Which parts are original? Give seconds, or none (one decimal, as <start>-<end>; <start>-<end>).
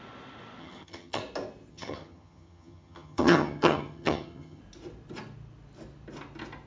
0.0-0.6; 1.2-1.7; 4.6-6.7